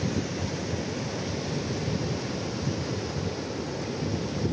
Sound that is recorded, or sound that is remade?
recorded